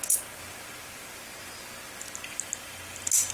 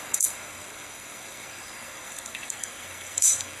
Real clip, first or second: first